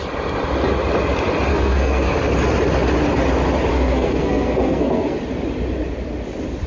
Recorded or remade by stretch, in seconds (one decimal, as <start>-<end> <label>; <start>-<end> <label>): 0.0-1.5 recorded; 1.5-2.1 remade; 2.1-3.7 recorded; 3.7-5.2 remade; 5.2-6.7 recorded